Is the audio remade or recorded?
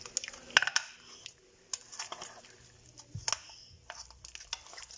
recorded